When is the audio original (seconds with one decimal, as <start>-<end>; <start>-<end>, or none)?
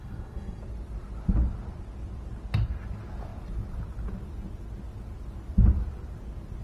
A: 0.6-6.6